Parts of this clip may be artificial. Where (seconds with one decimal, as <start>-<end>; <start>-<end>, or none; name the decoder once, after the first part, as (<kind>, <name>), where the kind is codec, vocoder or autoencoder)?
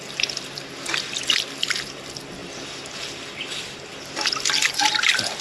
0.0-5.4 (vocoder, BigVGAN v2)